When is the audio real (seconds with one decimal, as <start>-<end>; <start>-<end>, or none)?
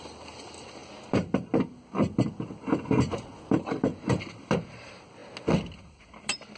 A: 0.8-4.7; 5.2-6.0